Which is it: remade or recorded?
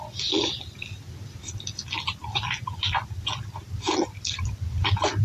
recorded